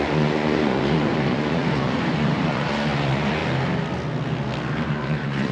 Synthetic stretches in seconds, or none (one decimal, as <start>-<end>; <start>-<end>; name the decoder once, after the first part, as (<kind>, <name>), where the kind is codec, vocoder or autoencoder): 0.0-3.4 (vocoder, Vocos); 4.9-5.5